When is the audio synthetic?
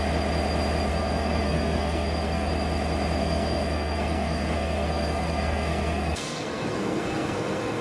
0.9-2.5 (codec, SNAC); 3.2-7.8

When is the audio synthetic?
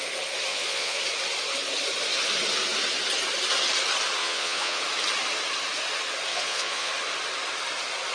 0.5-1.0 (vocoder, Vocos); 4.2-4.8; 6.3-6.9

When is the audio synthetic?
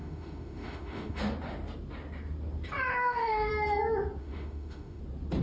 0.0-1.2 (autoencoder, DAC-VAE); 2.9-3.5; 4.2-5.0